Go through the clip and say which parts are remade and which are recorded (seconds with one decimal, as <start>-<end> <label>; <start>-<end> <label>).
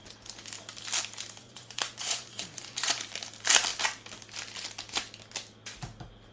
0.0-1.4 recorded; 1.4-3.0 remade; 3.0-6.3 recorded